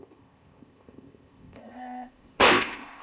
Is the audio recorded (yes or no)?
no